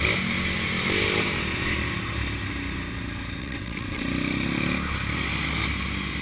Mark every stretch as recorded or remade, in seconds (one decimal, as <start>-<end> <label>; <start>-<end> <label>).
0.0-3.4 recorded; 3.4-4.0 remade; 4.0-6.2 recorded